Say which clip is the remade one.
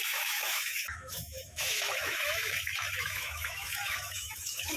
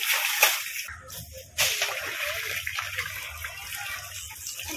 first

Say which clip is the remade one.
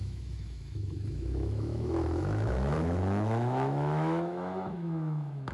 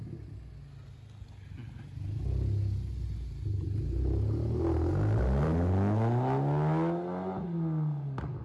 first